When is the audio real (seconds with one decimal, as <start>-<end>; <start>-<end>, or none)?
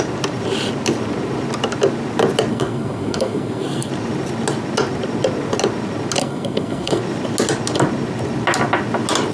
0.0-2.5; 3.9-6.2; 7.0-9.3